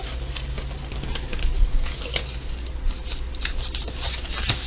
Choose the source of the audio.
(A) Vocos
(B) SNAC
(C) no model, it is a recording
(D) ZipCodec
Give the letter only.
C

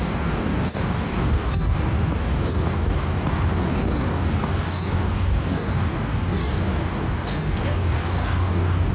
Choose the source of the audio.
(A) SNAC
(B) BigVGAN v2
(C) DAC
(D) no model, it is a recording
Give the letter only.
C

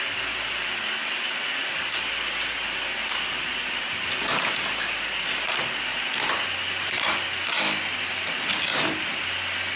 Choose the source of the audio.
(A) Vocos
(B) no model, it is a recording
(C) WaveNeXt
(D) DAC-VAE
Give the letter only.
B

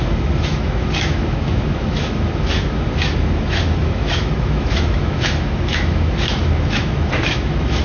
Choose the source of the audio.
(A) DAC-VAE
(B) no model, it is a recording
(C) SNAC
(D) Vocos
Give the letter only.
A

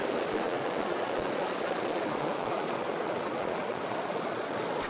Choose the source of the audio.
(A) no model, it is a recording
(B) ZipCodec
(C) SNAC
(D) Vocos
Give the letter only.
D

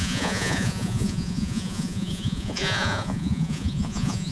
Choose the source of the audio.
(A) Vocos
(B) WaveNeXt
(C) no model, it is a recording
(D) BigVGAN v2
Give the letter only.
A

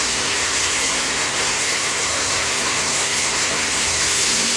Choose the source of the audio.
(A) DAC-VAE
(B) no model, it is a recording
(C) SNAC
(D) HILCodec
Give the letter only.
C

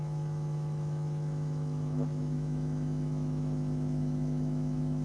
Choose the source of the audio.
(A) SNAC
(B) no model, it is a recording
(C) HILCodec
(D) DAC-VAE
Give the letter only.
D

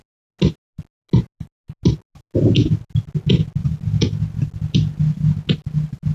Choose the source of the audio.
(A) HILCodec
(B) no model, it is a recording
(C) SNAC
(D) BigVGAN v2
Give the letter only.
B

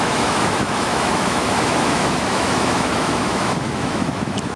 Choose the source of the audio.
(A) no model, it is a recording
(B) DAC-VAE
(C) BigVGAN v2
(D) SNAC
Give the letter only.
B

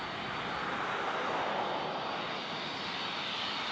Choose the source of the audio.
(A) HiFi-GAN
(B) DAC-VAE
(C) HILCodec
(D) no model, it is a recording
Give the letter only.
D